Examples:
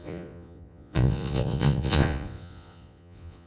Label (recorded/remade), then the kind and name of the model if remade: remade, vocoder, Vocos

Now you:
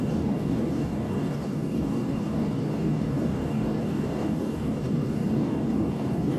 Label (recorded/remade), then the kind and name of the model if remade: remade, codec, DAC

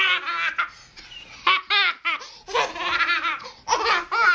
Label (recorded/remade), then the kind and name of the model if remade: recorded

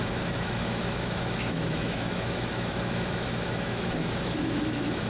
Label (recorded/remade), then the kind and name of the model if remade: remade, autoencoder, DAC-VAE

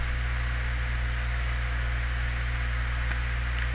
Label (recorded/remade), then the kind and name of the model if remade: recorded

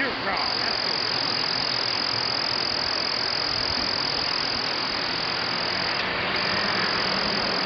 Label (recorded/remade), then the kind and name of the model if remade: recorded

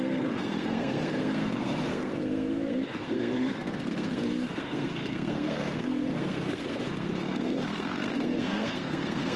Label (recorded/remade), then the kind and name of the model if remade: remade, codec, SNAC